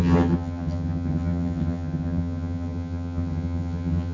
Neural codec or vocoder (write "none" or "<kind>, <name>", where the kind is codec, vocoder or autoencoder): vocoder, HiFi-GAN